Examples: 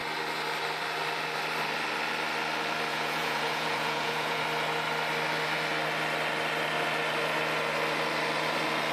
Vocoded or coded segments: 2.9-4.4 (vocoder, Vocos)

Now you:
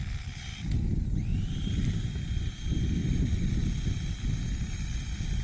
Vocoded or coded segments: 1.3-2.1 (vocoder, BigVGAN v2)

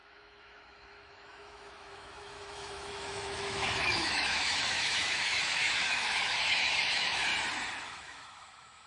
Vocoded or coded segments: 0.0-7.3 (autoencoder, DAC-VAE); 7.9-8.9

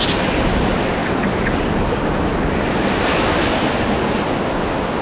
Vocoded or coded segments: none

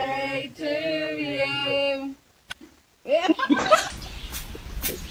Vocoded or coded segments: 0.0-0.9 (vocoder, BigVGAN v2)

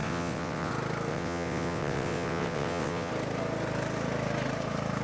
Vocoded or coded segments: 0.0-0.7 (vocoder, WaveNeXt); 1.1-3.1